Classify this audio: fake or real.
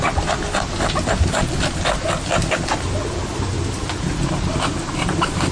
real